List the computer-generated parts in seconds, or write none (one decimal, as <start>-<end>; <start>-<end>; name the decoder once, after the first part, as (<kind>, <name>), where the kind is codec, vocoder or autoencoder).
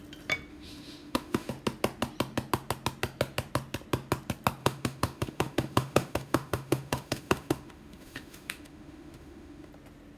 0.5-1.5 (autoencoder, DAC-VAE); 4.6-9.7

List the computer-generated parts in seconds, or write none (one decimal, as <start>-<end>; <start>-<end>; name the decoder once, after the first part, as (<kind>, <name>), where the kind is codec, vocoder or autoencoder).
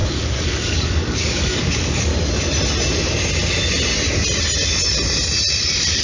0.0-2.1 (codec, DAC)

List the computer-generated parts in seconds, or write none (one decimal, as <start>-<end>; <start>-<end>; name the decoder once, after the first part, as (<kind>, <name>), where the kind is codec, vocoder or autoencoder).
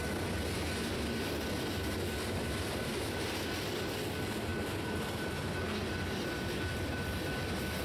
none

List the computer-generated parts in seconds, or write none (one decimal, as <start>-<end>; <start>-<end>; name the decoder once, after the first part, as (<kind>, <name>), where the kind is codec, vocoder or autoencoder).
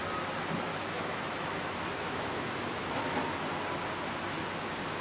0.7-3.0 (autoencoder, DAC-VAE)